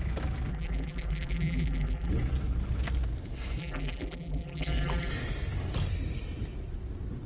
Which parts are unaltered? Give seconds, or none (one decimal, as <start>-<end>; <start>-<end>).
0.0-0.5; 2.1-3.6; 5.1-7.3